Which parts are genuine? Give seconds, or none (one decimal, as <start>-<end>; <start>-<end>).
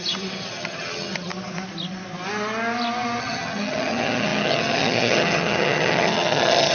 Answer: 1.3-3.2